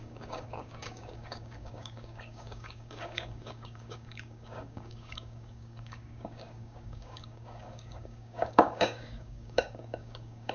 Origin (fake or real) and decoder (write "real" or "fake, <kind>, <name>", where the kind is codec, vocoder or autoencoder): fake, codec, DAC